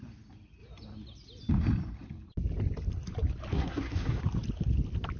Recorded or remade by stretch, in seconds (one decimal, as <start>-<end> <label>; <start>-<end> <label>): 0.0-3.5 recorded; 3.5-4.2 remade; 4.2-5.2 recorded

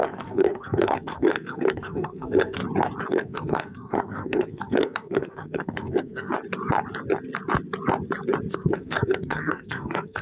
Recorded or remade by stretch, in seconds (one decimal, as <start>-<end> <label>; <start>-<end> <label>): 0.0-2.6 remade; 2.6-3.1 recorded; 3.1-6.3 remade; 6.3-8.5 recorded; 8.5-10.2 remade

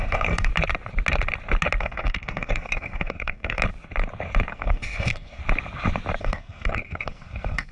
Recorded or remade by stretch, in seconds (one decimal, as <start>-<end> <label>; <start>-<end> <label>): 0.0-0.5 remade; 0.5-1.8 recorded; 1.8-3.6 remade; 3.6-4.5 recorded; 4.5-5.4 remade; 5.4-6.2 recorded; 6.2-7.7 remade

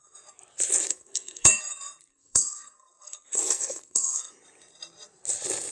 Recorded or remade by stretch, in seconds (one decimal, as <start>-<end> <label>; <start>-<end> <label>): 0.0-0.9 recorded; 0.9-1.6 remade; 1.6-2.1 recorded; 2.1-4.3 remade; 4.3-5.7 recorded

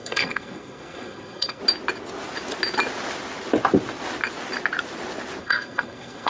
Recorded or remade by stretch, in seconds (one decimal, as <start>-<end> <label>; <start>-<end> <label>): 0.0-1.6 remade; 1.6-5.4 recorded; 5.4-6.3 remade